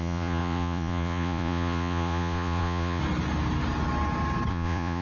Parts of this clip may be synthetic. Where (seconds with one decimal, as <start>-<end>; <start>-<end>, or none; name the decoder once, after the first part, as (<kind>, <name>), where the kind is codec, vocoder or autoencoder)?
0.0-3.0 (vocoder, Vocos); 4.5-5.0

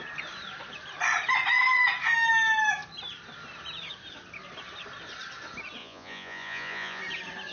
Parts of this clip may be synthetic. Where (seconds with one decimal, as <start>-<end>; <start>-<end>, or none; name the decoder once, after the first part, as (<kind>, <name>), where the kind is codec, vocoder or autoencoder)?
5.8-7.0 (vocoder, Vocos)